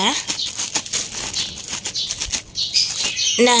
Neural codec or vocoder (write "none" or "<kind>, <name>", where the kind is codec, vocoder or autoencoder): none